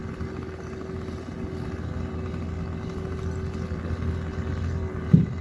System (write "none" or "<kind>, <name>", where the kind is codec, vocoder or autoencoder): none